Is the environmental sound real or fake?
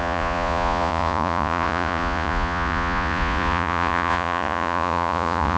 fake